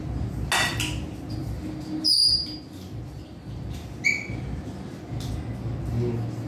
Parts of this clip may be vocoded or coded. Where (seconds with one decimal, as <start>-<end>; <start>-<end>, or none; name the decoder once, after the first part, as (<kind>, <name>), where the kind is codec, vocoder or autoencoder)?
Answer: none